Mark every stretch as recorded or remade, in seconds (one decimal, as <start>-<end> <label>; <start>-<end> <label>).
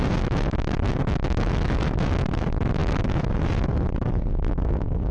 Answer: 0.0-4.3 recorded; 4.3-5.1 remade